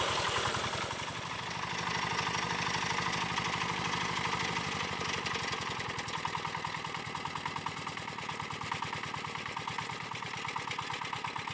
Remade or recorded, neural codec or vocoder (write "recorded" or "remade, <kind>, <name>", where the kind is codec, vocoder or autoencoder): recorded